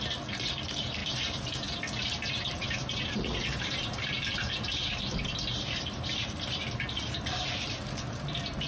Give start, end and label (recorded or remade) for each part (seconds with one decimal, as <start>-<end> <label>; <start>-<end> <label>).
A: 0.0-8.7 remade